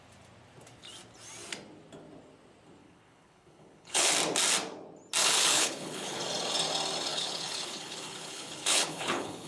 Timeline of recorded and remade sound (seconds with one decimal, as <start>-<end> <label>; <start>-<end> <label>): 0.0-2.8 recorded; 2.8-4.1 remade; 4.1-5.2 recorded; 5.2-6.2 remade; 6.2-7.1 recorded; 7.1-9.5 remade